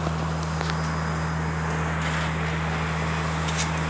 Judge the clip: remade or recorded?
recorded